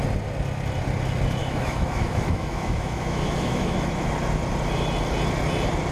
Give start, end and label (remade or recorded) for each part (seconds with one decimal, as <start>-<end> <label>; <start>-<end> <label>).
0.0-1.4 recorded; 1.4-4.1 remade; 4.1-5.9 recorded